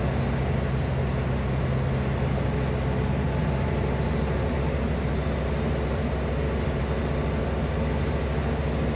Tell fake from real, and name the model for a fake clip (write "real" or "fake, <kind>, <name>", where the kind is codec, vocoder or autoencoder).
real